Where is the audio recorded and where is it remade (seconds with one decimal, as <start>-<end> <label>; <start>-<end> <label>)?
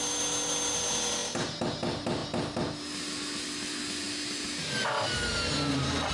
0.0-6.1 recorded